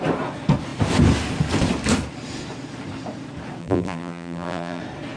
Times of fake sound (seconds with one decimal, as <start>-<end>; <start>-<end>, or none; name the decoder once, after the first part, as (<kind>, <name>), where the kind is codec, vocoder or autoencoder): 3.6-4.8 (vocoder, BigVGAN v2)